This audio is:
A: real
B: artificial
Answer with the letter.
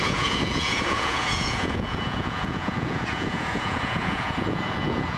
B